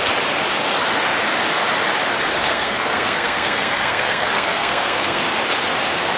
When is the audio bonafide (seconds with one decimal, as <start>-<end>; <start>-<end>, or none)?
0.0-2.5; 5.2-6.2